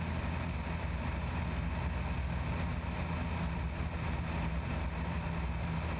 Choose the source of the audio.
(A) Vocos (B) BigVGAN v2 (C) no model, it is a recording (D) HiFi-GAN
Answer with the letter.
C